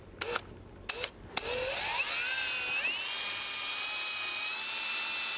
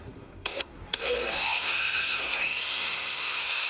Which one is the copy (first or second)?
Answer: second